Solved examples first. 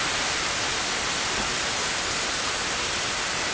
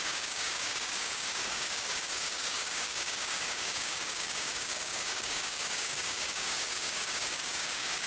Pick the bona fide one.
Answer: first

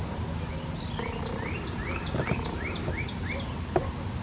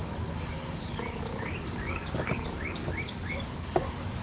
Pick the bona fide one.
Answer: first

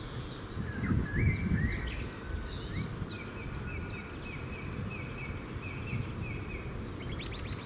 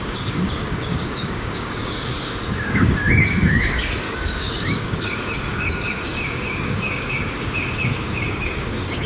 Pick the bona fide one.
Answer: first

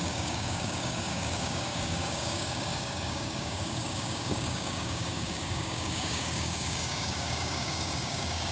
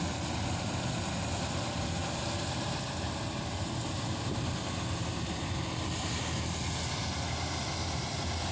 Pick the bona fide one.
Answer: second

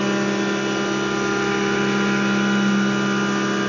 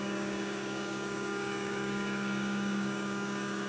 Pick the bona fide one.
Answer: first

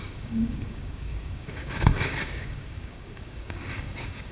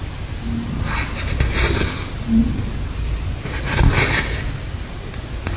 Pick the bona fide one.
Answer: second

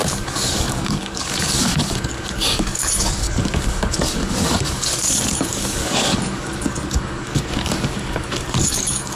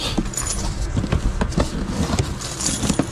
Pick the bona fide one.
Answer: second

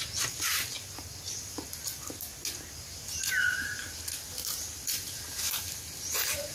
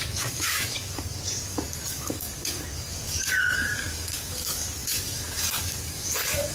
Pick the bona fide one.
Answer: first